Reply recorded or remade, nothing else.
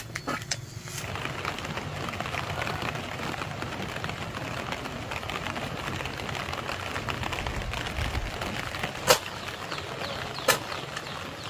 recorded